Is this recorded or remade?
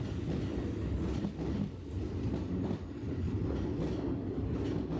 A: recorded